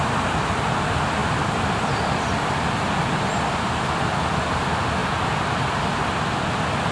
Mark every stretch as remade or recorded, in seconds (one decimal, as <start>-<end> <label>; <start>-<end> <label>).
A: 0.0-6.9 recorded